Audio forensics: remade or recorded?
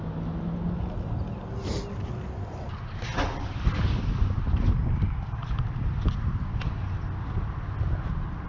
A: recorded